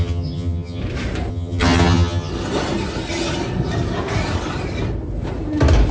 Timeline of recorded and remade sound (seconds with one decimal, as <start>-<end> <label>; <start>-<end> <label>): 0.0-0.8 remade; 0.8-1.3 recorded; 1.3-2.3 remade; 2.3-5.9 recorded